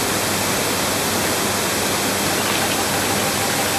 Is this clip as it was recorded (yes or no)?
yes